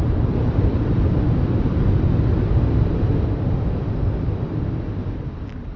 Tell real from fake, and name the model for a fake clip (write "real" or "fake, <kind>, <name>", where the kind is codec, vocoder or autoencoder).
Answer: fake, vocoder, BigVGAN v2